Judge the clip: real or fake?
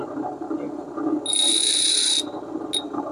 real